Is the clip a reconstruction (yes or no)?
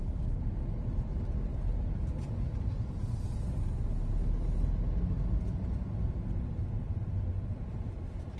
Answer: no